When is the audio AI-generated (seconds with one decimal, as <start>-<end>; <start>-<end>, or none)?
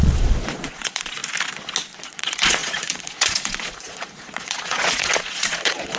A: 0.0-1.2; 2.0-6.0